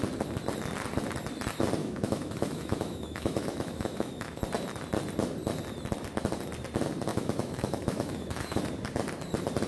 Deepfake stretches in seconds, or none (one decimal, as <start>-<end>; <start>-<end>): 1.8-4.4; 7.1-8.6